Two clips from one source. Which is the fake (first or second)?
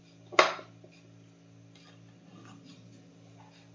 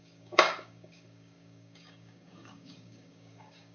second